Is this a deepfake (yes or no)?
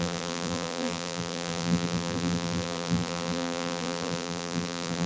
yes